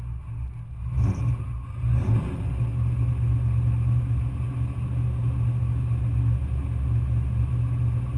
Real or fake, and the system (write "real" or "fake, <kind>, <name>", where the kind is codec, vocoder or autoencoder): real